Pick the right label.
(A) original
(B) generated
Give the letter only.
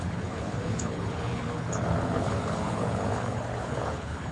B